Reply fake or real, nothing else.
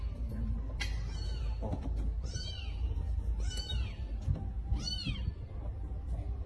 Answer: real